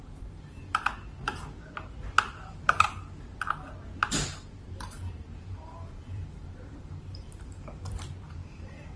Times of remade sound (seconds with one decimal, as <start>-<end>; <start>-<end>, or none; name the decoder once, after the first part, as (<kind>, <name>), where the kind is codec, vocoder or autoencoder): 0.0-3.3 (vocoder, BigVGAN v2); 4.1-9.0